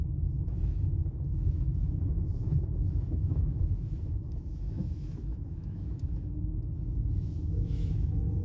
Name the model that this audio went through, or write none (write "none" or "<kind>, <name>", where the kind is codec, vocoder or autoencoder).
autoencoder, DAC-VAE